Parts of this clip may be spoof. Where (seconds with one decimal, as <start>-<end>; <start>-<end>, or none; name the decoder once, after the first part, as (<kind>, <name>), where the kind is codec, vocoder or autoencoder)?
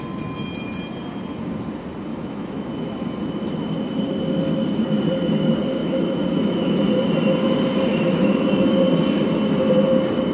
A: 2.1-2.7 (autoencoder, DAC-VAE); 5.8-6.8; 7.9-8.5